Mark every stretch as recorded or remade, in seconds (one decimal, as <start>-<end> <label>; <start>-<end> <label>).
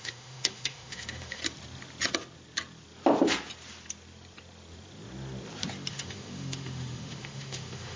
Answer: 0.0-1.4 remade; 1.4-5.9 recorded; 5.9-8.0 remade